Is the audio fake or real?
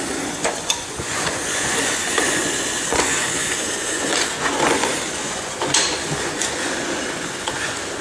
fake